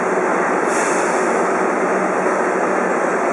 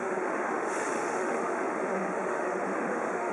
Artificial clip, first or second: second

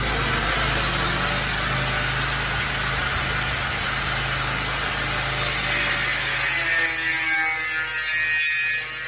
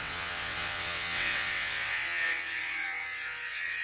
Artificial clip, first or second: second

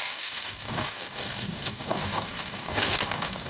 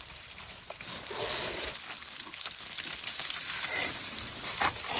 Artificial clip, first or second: first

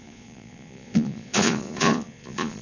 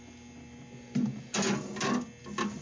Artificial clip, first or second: first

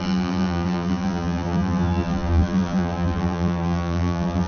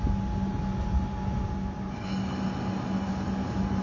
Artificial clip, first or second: first